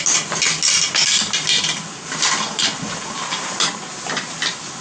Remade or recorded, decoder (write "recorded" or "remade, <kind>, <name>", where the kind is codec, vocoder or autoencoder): recorded